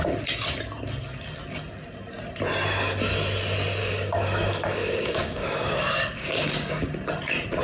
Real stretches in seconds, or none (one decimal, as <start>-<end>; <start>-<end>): 0.0-3.8; 6.9-7.6